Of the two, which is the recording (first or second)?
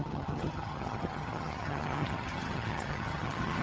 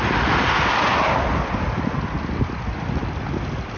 second